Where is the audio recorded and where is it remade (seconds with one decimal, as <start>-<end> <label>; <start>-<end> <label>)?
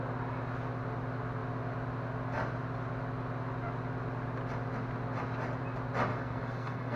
0.0-6.1 recorded; 6.1-7.0 remade